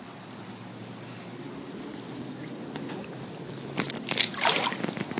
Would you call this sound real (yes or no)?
yes